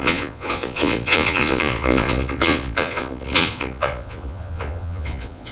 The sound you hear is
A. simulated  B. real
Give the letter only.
A